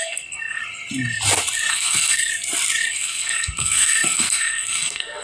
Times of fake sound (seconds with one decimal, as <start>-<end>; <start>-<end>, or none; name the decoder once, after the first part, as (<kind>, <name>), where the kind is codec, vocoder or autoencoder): 0.0-0.6 (codec, SNAC); 1.7-2.3; 2.9-5.2